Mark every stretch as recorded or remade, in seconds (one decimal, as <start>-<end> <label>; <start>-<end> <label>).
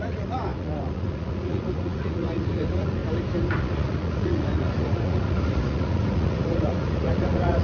0.0-3.0 remade; 3.0-3.6 recorded; 3.6-7.6 remade